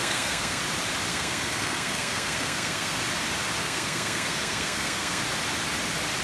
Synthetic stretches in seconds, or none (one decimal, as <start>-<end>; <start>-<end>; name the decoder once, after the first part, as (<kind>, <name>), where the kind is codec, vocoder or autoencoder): 0.0-0.6 (codec, SNAC); 1.1-3.0; 3.6-5.2